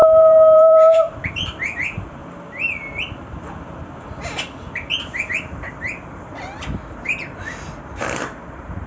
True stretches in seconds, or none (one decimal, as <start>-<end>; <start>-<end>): 2.2-5.3; 6.3-8.5